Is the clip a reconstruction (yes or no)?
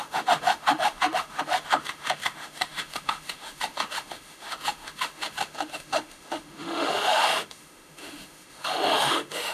yes